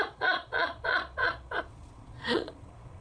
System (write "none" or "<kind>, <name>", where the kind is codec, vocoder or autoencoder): vocoder, Vocos